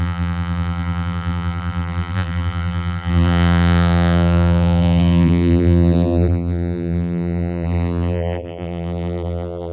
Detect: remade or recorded remade